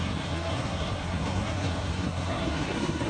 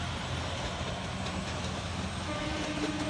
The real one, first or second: second